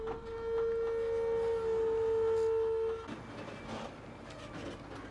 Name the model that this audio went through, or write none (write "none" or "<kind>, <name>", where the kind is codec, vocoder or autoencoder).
none